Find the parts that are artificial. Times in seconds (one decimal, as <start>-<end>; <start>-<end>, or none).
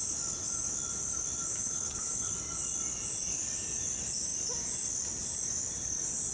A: 1.5-2.3